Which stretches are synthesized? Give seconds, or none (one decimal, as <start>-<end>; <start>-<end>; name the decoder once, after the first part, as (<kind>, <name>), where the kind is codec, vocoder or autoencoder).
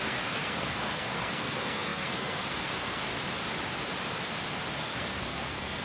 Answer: 0.0-3.1 (codec, SNAC); 4.8-5.8